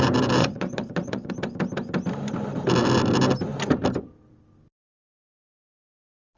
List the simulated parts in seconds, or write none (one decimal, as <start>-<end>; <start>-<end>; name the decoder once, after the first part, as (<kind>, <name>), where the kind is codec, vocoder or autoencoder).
0.4-1.3 (vocoder, Vocos)